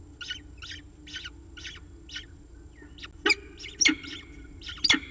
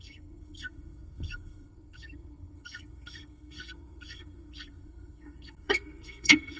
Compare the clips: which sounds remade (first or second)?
second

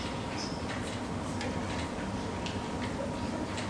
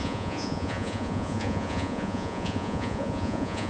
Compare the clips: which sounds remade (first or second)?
second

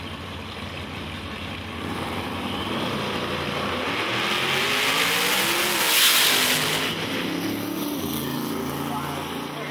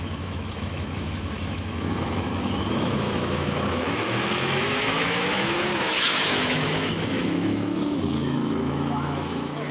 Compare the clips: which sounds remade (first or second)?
second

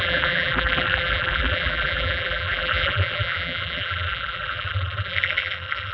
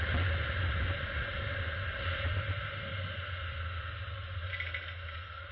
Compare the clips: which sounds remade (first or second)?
first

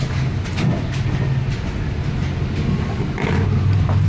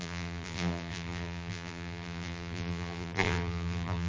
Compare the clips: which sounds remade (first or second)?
second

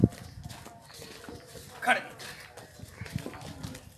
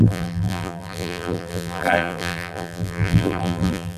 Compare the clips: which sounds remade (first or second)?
second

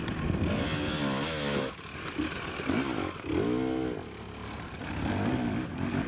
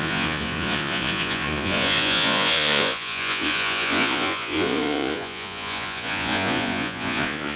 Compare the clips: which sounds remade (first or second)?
second